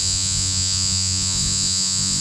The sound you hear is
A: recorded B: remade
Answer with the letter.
B